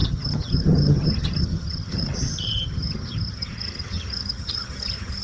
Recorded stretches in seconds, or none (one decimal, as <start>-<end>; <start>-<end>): none

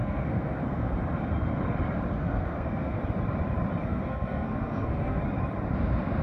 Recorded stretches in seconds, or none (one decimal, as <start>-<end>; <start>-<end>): 0.9-2.1; 3.0-3.8; 5.2-6.2

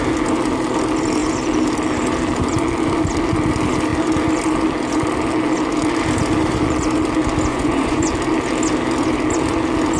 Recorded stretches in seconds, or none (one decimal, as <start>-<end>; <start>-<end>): 0.0-7.5; 8.1-10.0

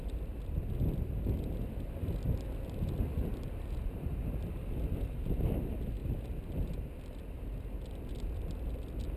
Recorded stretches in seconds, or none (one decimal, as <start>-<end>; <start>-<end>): 0.0-9.2